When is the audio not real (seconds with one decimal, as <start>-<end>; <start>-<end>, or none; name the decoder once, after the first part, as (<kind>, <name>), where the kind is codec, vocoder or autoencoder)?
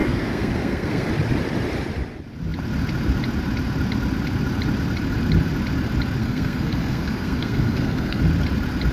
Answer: 0.0-1.1 (codec, SNAC); 6.2-8.2